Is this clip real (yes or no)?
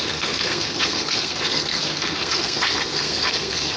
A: no